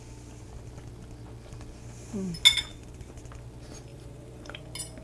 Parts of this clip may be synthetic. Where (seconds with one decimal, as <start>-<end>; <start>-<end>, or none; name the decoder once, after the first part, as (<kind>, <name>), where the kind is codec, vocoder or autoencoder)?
2.7-3.2 (vocoder, BigVGAN v2); 3.9-4.6

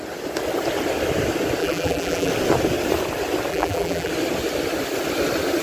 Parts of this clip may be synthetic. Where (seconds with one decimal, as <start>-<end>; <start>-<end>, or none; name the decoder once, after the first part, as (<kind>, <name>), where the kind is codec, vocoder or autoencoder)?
1.6-2.3 (vocoder, BigVGAN v2); 3.5-4.1

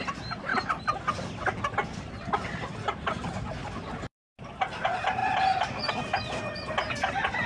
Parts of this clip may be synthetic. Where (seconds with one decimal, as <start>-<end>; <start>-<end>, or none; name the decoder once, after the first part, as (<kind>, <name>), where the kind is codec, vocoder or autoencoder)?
5.2-5.9 (vocoder, BigVGAN v2)

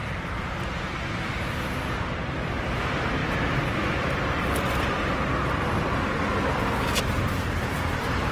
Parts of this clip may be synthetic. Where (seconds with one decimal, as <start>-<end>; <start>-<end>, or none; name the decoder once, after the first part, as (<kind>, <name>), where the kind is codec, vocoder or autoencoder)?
0.0-3.2 (vocoder, BigVGAN v2); 7.0-8.3

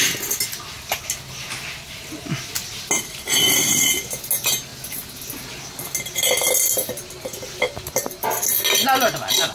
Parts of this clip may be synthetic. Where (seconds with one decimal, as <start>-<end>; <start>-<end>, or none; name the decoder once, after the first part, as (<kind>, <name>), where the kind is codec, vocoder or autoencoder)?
none

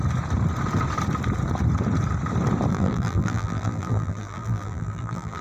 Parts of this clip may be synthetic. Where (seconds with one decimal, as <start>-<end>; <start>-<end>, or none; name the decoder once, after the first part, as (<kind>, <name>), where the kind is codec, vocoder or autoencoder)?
2.7-5.4 (vocoder, BigVGAN v2)